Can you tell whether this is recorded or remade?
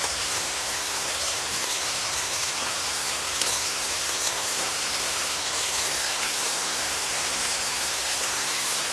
remade